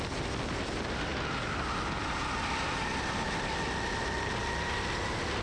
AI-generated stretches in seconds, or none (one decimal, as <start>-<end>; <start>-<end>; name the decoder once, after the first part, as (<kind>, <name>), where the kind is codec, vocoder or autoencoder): none